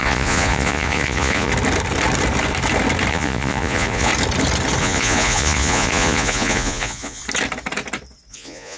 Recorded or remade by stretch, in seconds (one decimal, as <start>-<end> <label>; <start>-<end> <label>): 0.0-1.5 remade; 1.5-3.1 recorded; 3.1-4.1 remade; 4.1-4.8 recorded; 4.8-7.2 remade; 7.2-8.3 recorded; 8.3-8.8 remade